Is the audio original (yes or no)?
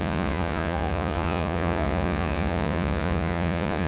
no